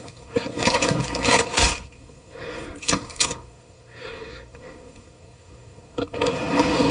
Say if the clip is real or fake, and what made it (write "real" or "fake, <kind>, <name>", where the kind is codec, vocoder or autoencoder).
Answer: fake, codec, SNAC